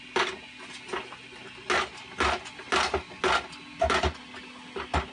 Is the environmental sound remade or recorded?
recorded